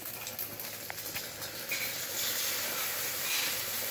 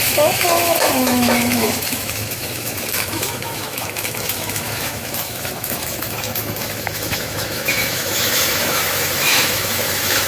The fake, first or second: second